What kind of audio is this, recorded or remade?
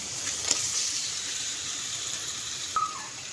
remade